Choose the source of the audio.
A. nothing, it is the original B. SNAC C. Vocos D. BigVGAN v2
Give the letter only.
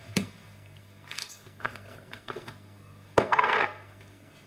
B